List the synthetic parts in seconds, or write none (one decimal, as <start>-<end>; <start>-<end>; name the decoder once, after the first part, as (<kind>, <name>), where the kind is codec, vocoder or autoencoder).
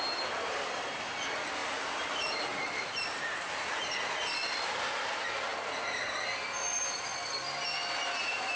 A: 1.6-4.0 (vocoder, BigVGAN v2)